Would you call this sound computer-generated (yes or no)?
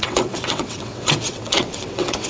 yes